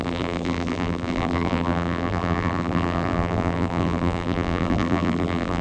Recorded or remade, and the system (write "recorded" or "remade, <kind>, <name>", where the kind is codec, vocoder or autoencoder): remade, vocoder, BigVGAN v2